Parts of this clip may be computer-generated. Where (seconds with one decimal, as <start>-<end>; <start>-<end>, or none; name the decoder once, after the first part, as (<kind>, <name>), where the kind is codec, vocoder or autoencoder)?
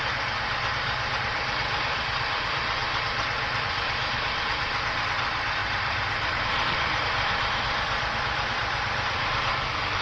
0.0-2.8 (vocoder, BigVGAN v2); 3.6-10.0